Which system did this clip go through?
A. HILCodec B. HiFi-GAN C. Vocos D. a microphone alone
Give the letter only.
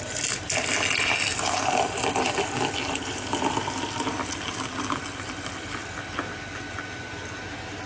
D